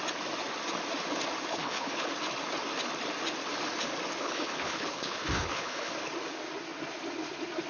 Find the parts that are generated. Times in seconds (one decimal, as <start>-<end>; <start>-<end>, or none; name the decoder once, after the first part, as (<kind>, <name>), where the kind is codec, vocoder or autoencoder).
1.5-2.1 (codec, HILCodec); 4.2-5.9